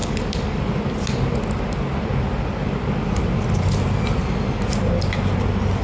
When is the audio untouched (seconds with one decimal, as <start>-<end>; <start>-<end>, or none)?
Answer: 0.6-5.8